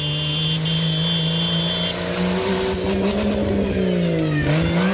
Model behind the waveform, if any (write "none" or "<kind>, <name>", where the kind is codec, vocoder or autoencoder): none